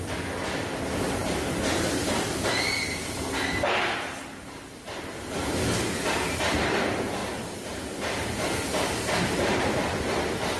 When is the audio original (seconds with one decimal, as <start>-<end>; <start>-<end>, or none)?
0.0-10.6